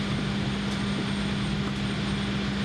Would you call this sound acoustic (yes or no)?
yes